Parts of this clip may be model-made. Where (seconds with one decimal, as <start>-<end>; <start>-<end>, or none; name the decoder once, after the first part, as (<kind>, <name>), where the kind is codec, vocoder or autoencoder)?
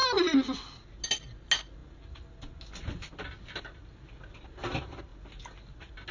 none